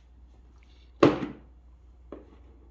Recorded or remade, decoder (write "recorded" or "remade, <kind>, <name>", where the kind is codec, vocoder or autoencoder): recorded